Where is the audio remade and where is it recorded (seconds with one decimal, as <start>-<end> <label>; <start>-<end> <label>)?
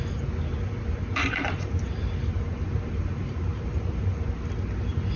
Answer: 0.0-1.2 recorded; 1.2-4.3 remade; 4.3-5.2 recorded